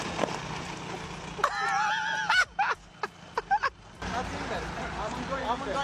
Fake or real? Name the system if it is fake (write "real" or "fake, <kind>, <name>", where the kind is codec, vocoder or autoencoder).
real